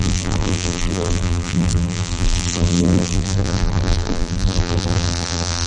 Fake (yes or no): yes